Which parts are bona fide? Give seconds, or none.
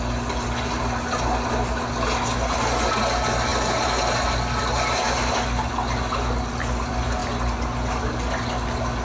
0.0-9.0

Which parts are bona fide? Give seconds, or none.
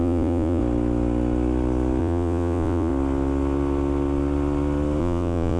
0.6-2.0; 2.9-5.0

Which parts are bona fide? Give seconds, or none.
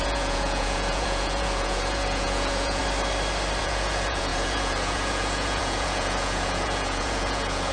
2.8-3.6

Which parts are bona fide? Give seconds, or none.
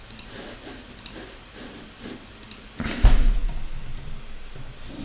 0.0-5.0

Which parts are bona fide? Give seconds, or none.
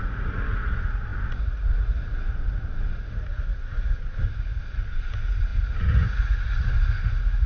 none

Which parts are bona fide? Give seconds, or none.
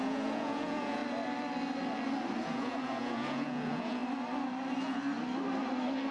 1.0-2.4; 4.0-6.1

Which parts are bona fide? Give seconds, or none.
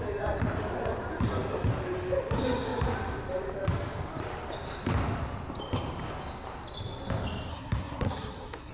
0.0-7.5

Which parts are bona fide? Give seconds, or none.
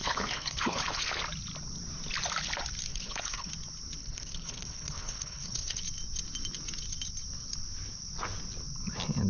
1.2-2.9; 3.5-4.0; 5.8-9.3